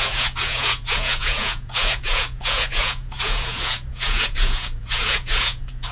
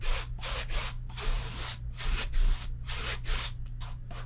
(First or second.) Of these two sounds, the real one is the second